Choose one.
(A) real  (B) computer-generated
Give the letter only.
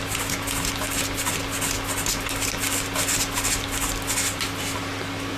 A